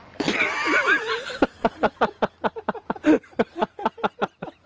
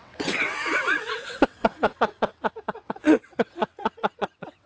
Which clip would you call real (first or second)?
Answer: first